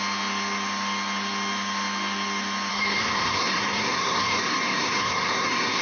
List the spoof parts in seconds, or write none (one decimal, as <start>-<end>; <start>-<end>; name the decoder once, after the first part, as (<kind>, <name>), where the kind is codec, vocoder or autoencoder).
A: 2.7-5.8 (codec, SNAC)